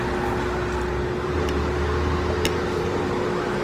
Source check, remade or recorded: recorded